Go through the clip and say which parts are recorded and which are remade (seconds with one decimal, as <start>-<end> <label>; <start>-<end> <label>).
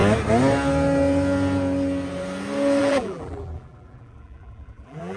0.0-2.8 recorded; 2.8-5.2 remade